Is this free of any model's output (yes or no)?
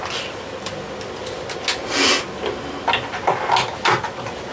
yes